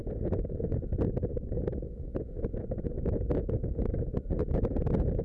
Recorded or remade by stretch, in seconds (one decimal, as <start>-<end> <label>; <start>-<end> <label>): 0.0-1.3 recorded; 1.3-4.4 remade; 4.4-5.2 recorded